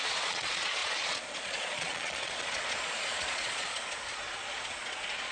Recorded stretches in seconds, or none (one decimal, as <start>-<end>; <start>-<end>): none